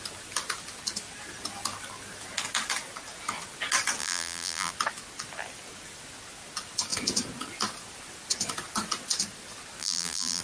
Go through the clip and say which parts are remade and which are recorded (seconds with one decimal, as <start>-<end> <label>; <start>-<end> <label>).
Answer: 0.0-4.0 recorded; 4.0-4.7 remade; 4.7-9.8 recorded; 9.8-10.4 remade